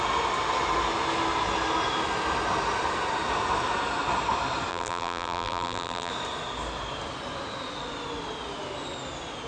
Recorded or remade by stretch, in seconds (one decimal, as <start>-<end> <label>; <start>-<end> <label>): 0.0-4.7 recorded; 4.7-6.1 remade; 6.1-9.5 recorded